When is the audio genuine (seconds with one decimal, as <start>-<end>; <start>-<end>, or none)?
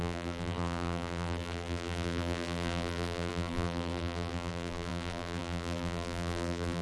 none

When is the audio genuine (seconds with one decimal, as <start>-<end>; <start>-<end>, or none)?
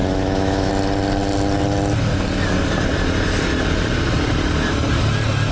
0.7-5.5